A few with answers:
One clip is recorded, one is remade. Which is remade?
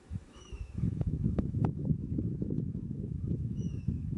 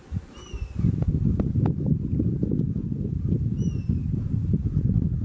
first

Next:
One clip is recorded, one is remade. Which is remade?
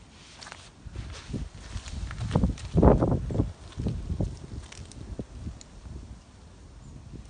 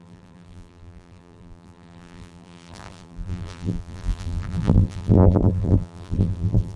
second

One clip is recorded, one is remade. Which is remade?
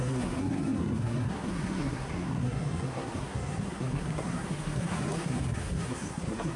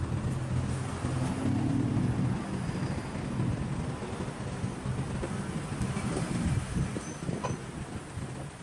first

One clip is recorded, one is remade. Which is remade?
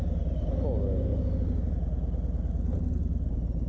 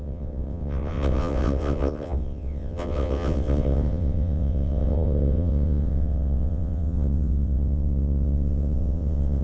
second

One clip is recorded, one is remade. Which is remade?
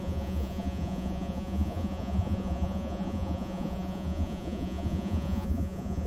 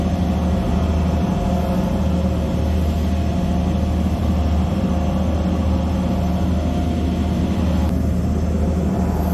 first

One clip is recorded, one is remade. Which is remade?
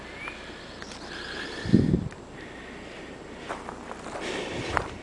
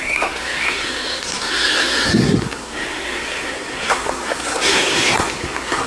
second